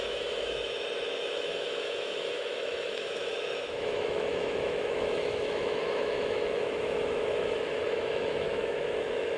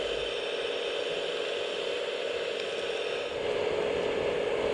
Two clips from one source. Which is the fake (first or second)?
first